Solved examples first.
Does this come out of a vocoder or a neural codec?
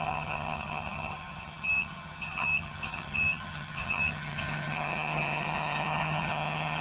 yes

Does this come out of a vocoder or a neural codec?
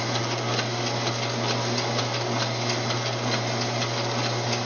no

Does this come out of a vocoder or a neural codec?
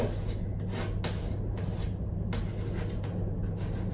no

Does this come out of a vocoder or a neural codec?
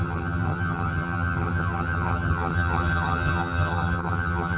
yes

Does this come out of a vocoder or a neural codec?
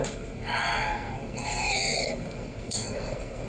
yes